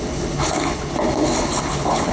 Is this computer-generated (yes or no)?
yes